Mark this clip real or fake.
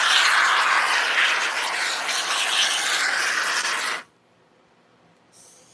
real